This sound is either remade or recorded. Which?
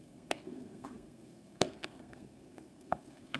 remade